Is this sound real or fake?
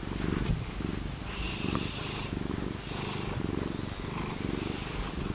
real